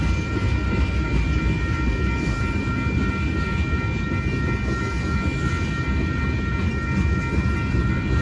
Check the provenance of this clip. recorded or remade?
recorded